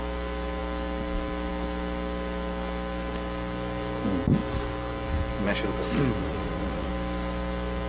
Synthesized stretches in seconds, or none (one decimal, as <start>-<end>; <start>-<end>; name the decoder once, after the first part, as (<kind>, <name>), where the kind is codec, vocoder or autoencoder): 6.2-6.9 (vocoder, Vocos)